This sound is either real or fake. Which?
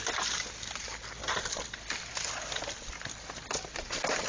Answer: real